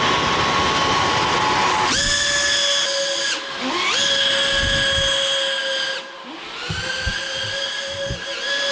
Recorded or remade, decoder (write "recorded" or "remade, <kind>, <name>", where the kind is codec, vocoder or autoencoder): recorded